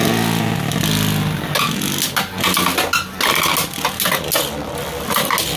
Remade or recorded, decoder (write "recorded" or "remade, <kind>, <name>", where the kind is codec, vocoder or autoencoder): recorded